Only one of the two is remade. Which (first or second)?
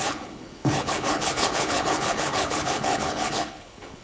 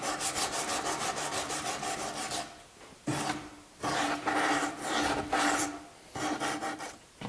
first